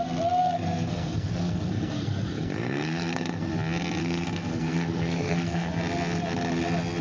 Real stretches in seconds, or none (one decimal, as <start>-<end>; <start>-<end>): 0.0-0.4; 3.5-4.0; 5.7-7.0